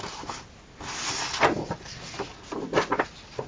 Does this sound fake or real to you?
real